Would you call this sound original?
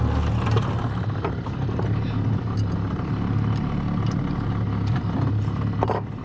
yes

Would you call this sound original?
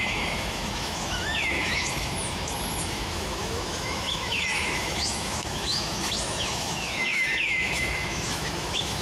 no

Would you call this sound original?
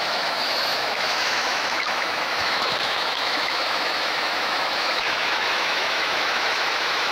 no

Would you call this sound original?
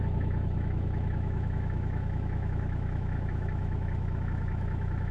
no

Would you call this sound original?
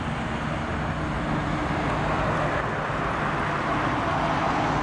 yes